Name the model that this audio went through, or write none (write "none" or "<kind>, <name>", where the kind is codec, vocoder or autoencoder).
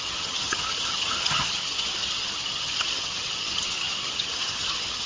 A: vocoder, HiFi-GAN